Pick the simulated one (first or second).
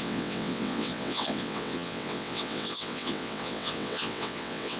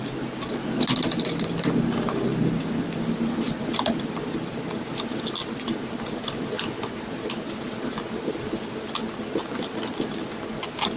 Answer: first